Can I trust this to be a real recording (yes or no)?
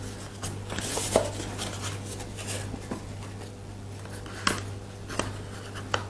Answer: yes